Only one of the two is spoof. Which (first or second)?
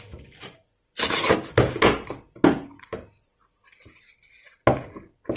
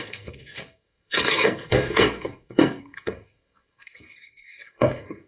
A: second